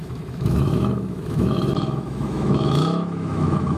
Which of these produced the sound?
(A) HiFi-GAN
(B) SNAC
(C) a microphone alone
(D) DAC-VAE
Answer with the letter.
D